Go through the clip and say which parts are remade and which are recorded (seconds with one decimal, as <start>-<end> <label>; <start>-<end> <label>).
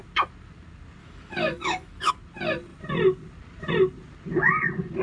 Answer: 0.0-1.0 recorded; 1.0-2.1 remade; 2.1-5.0 recorded